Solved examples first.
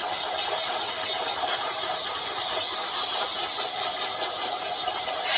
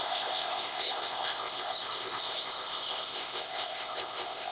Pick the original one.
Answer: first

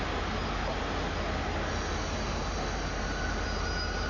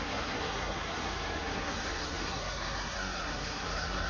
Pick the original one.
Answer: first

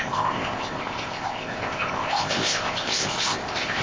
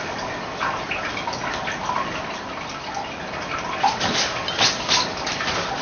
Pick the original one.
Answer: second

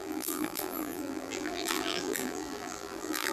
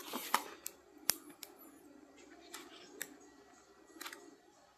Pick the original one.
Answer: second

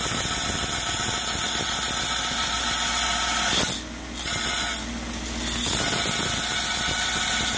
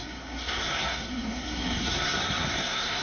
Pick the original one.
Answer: first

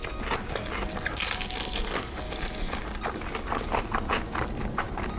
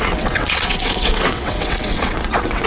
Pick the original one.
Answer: first